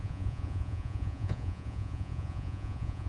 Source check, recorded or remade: remade